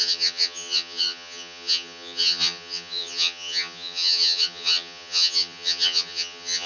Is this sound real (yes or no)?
no